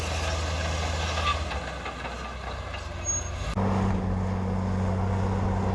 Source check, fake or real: real